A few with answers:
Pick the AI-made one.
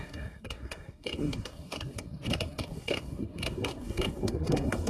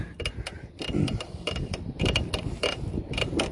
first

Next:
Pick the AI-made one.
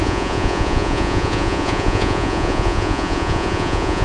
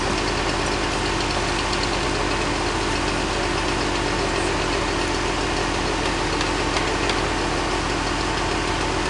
first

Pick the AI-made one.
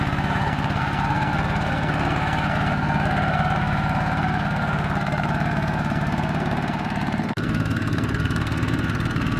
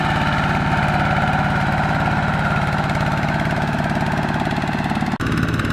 first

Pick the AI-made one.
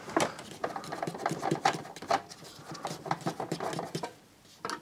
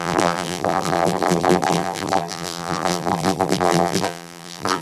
second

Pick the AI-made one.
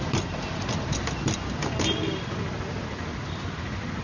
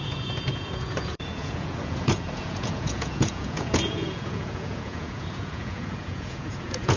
second